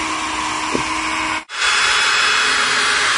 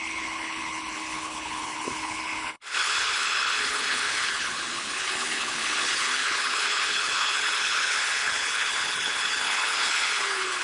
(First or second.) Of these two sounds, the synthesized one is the second